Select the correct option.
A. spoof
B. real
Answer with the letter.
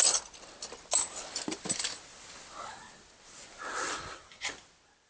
B